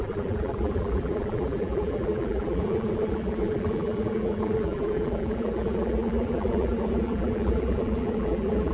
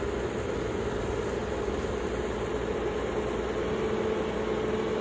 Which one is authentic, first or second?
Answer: second